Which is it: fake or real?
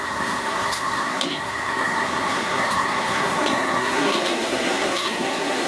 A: fake